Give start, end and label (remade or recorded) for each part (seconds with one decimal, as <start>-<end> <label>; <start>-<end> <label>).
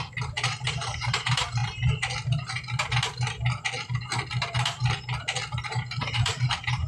0.0-1.6 remade; 1.6-5.7 recorded; 5.7-6.9 remade